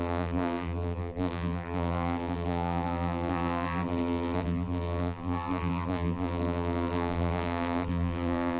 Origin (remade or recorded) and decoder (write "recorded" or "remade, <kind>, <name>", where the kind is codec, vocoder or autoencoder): remade, vocoder, BigVGAN v2